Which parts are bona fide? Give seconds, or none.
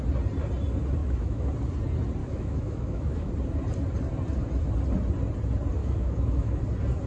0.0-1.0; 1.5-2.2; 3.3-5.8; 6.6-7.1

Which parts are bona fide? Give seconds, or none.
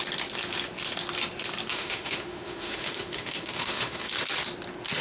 0.0-1.7; 4.1-5.0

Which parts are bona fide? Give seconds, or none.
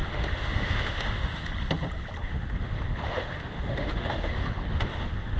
1.5-2.2